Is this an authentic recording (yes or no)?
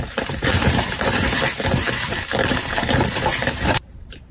no